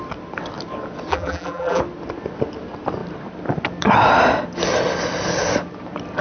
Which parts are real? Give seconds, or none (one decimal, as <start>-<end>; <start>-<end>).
0.0-1.1; 1.8-6.2